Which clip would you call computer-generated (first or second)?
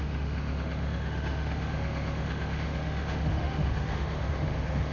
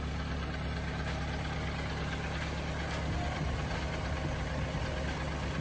first